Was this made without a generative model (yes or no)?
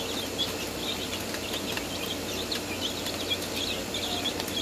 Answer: yes